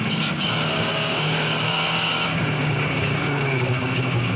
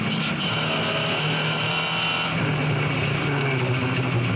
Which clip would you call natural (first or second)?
second